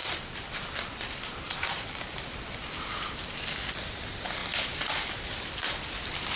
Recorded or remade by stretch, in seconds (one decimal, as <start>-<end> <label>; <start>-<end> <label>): 0.0-2.1 remade; 2.1-2.6 recorded; 2.6-3.3 remade; 3.3-4.4 recorded; 4.4-5.7 remade; 5.7-6.4 recorded